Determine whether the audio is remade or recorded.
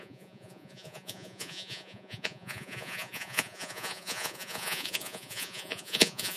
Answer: remade